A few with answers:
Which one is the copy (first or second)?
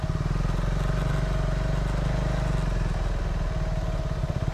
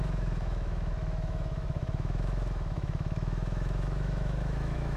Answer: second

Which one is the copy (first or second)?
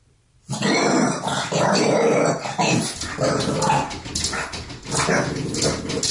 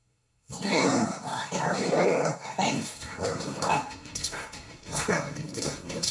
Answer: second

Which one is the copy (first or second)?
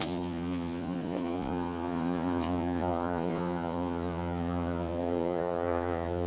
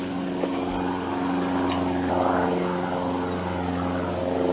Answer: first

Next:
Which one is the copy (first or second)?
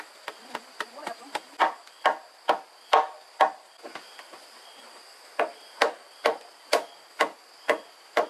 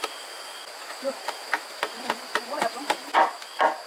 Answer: first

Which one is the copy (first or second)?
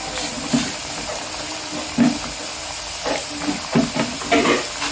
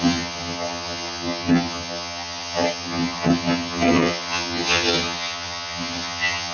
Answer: second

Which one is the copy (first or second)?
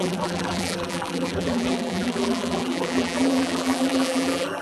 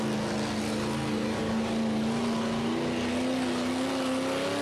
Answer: first